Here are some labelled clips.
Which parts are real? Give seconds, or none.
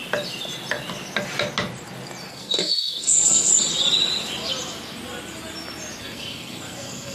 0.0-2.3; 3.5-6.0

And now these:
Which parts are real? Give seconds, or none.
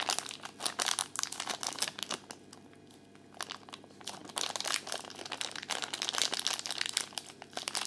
0.0-7.9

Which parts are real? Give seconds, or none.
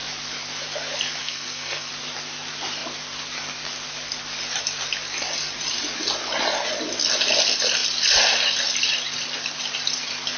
0.0-1.2; 1.9-10.4